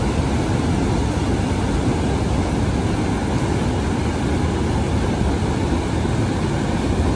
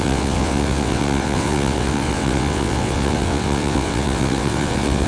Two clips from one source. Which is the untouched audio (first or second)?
first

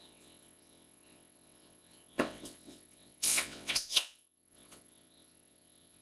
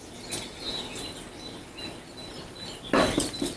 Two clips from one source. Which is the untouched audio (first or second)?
second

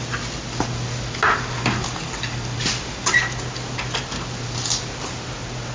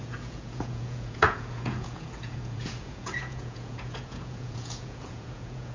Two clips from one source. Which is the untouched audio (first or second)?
first